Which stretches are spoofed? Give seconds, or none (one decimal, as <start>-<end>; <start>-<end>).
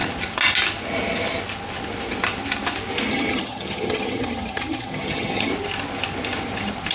3.1-5.5